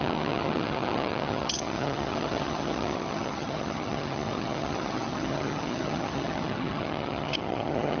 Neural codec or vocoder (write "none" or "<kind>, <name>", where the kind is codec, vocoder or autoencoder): vocoder, HiFi-GAN